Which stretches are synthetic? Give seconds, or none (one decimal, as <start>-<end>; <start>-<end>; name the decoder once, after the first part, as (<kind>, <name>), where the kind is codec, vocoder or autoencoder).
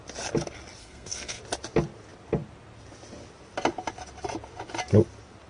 0.8-1.4 (codec, SNAC)